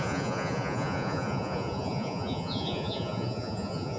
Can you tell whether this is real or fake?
fake